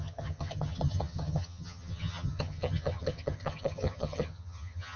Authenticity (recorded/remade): remade